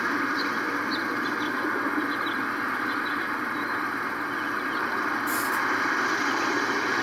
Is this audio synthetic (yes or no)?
no